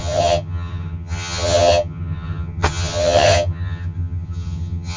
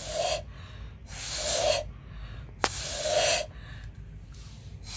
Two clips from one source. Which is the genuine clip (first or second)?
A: second